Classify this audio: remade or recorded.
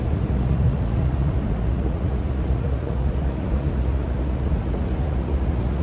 remade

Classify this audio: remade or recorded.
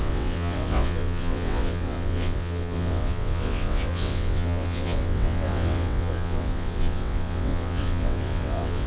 remade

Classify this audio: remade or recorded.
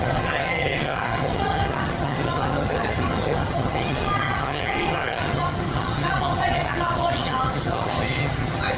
remade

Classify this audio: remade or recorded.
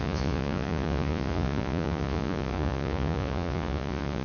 remade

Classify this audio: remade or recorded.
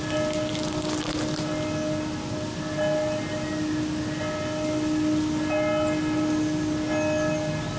recorded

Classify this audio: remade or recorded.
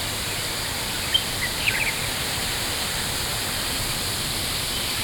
remade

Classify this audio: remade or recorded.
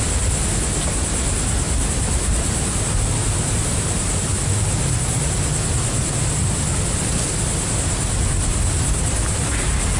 recorded